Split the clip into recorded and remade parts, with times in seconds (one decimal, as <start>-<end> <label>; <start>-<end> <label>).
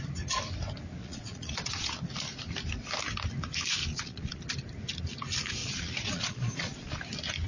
0.0-1.0 recorded; 1.0-1.9 remade; 1.9-3.8 recorded; 3.8-4.4 remade; 4.4-5.6 recorded; 5.6-7.0 remade; 7.0-7.5 recorded